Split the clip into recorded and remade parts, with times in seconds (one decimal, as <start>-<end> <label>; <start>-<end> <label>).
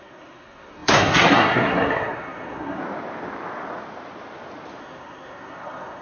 0.0-2.8 remade; 2.8-4.8 recorded; 4.8-6.0 remade